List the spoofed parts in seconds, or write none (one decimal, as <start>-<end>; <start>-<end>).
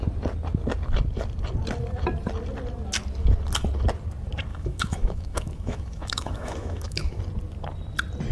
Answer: 4.5-7.2